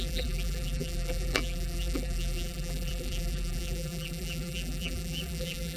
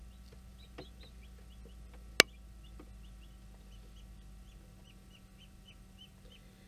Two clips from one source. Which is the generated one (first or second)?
first